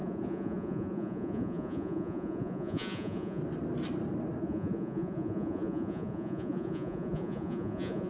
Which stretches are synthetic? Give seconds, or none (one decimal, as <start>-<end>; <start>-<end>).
0.0-3.4; 4.4-8.1